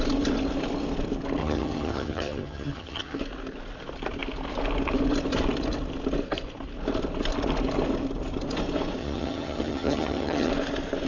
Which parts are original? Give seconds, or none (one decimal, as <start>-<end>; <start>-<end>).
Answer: 0.0-1.4; 3.2-9.0; 10.5-11.1